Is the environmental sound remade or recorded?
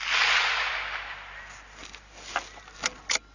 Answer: recorded